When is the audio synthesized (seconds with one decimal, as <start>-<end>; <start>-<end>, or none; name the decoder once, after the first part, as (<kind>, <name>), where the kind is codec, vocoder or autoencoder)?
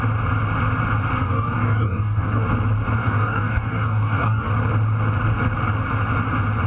1.2-2.5 (codec, DAC); 3.0-4.5